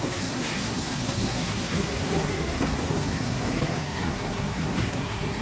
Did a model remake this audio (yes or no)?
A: yes